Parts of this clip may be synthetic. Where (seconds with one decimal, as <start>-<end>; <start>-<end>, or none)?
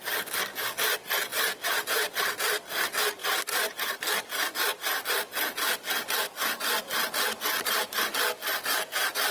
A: 3.2-8.0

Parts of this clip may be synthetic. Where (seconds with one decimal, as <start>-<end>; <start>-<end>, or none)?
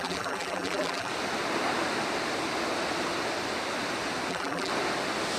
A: 0.0-1.1; 4.3-4.7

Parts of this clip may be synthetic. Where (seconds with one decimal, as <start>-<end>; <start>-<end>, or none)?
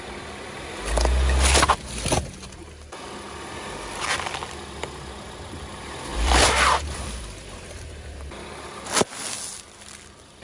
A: 6.1-8.9